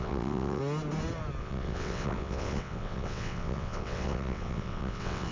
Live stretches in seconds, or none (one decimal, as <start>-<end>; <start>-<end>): 0.6-1.4